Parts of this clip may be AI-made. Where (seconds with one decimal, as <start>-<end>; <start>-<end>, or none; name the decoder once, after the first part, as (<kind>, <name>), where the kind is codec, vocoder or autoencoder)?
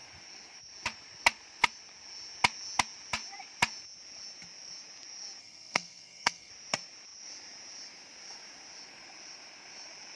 5.4-6.5 (codec, SNAC)